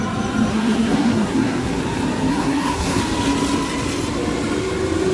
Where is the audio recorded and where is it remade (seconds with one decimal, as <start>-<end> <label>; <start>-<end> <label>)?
0.0-0.5 recorded; 0.5-1.8 remade; 1.8-2.3 recorded; 2.3-3.0 remade; 3.0-5.1 recorded